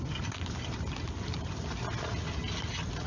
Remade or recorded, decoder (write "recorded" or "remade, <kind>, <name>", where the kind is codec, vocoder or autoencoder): recorded